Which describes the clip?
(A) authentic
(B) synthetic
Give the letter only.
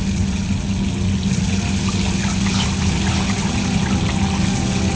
A